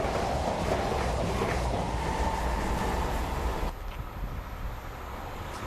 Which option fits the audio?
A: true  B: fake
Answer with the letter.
A